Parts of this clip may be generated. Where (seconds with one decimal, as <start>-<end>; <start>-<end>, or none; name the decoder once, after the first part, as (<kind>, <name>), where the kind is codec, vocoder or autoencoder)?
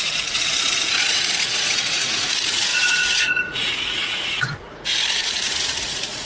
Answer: 0.0-6.2 (vocoder, Vocos)